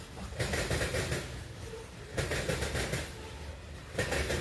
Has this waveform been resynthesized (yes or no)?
no